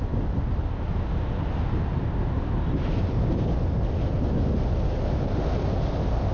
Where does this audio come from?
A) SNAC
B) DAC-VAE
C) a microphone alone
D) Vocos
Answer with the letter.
C